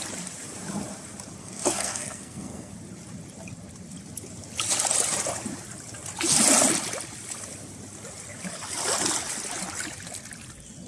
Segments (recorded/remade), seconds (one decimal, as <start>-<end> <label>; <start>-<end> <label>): 0.0-1.4 recorded; 1.4-2.7 remade; 2.7-10.9 recorded